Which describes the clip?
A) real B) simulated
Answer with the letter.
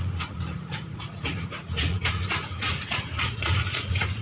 B